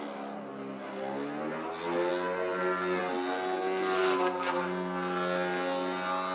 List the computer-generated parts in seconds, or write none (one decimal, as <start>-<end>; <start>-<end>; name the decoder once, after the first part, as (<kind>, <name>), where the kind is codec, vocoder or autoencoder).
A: none